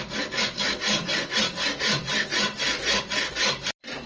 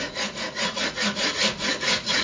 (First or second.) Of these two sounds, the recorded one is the first